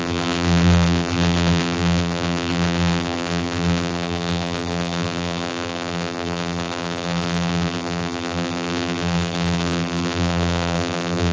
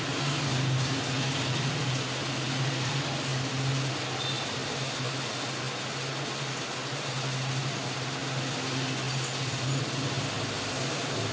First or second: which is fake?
first